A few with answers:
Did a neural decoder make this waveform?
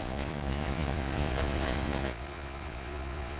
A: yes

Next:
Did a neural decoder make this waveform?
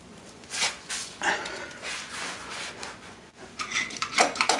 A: yes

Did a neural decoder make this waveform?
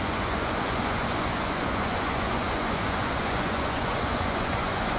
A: yes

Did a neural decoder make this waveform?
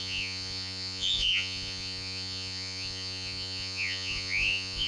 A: yes